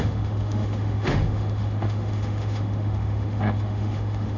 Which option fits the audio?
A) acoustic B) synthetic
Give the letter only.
B